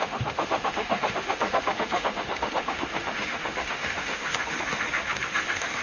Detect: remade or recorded remade